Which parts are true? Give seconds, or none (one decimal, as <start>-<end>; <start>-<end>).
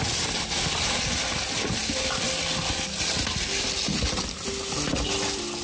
0.0-5.6